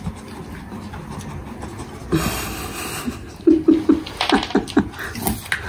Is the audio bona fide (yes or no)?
yes